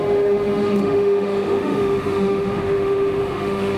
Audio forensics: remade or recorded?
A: remade